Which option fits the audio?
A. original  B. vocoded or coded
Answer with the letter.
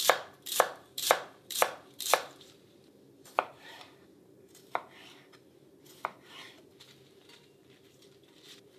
B